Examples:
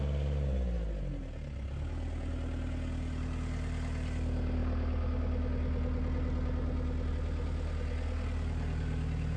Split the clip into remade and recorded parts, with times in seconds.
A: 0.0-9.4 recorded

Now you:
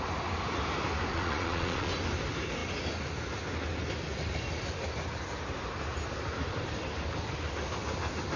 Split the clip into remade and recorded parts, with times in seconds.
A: 0.0-1.1 recorded; 1.1-1.9 remade; 1.9-8.4 recorded